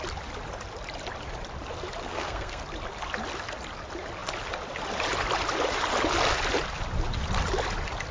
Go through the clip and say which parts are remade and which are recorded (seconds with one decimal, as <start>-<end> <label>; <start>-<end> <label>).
0.0-2.0 recorded; 2.0-2.6 remade; 2.6-8.1 recorded